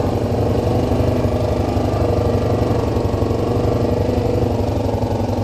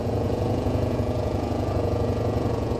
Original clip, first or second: first